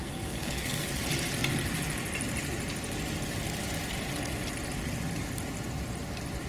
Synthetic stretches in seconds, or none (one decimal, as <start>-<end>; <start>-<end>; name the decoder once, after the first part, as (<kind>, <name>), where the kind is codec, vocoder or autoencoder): 0.0-0.9 (codec, SNAC)